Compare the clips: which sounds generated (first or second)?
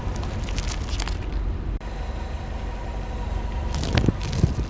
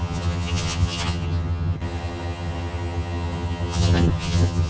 second